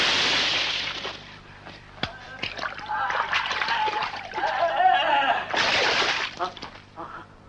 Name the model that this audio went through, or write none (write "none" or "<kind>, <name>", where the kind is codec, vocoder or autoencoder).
vocoder, BigVGAN v2